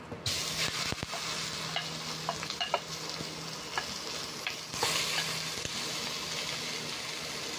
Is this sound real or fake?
real